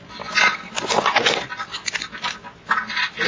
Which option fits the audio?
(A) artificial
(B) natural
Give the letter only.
B